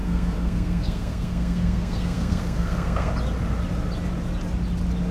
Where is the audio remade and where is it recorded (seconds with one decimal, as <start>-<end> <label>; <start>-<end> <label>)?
0.0-3.1 remade; 3.1-5.1 recorded

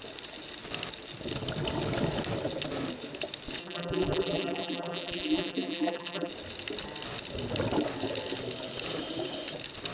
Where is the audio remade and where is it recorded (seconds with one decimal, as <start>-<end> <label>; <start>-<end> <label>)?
0.0-3.6 recorded; 3.6-6.3 remade; 6.3-9.9 recorded

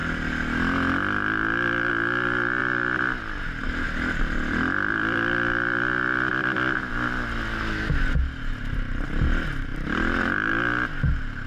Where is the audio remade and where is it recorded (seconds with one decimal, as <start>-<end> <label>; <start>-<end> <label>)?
0.0-2.6 recorded; 2.6-6.9 remade; 6.9-9.7 recorded; 9.7-10.5 remade; 10.5-11.5 recorded

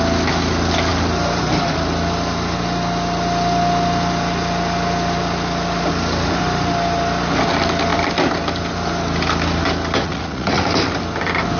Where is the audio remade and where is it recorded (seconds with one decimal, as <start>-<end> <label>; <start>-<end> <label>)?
0.0-10.0 recorded; 10.0-10.6 remade; 10.6-11.6 recorded

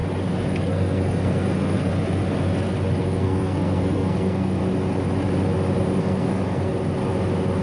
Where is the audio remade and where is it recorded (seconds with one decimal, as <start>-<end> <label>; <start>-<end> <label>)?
0.0-0.6 recorded; 0.6-1.9 remade; 1.9-3.0 recorded; 3.0-4.6 remade; 4.6-6.0 recorded; 6.0-6.7 remade; 6.7-7.6 recorded

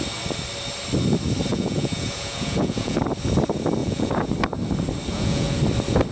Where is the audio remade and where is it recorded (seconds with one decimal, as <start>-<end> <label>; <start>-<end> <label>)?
0.0-1.5 recorded; 1.5-3.0 remade; 3.0-3.8 recorded; 3.8-4.3 remade; 4.3-5.1 recorded; 5.1-5.6 remade; 5.6-6.1 recorded

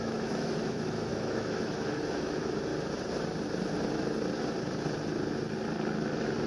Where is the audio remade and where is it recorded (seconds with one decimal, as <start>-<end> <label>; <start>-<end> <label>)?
0.0-2.7 remade; 2.7-6.5 recorded

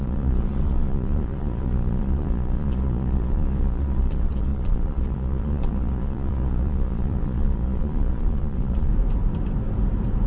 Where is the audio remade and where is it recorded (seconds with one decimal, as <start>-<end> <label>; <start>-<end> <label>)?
0.0-8.9 remade; 8.9-10.3 recorded